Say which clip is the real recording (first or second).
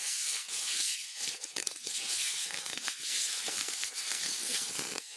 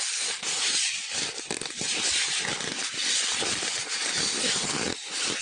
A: second